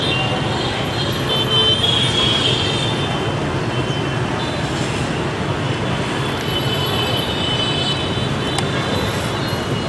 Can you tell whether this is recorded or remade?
recorded